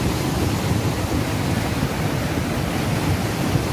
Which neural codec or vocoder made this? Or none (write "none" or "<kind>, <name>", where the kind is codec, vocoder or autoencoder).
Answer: none